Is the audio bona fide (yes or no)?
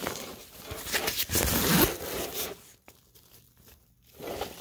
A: yes